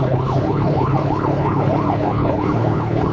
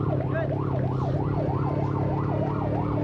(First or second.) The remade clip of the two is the first